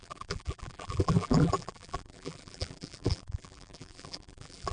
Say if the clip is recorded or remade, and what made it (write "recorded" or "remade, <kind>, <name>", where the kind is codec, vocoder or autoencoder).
remade, vocoder, BigVGAN v2